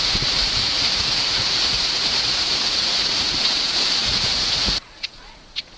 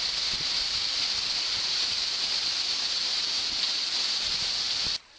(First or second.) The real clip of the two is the second